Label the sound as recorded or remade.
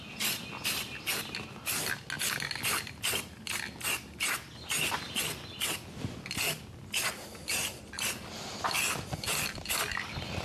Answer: recorded